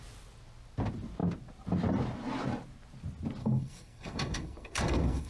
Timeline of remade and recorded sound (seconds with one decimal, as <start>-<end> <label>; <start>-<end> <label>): 0.0-3.4 recorded; 3.4-5.3 remade